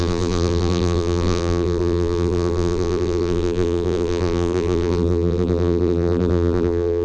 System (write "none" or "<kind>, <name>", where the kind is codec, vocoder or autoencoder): vocoder, BigVGAN v2